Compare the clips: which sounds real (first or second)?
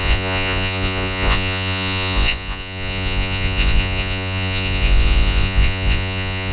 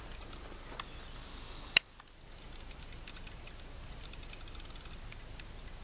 second